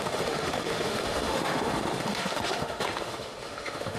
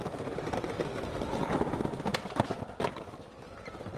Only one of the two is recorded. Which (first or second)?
second